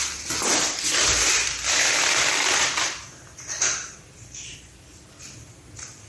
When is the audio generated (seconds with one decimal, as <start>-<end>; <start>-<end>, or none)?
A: 1.4-5.1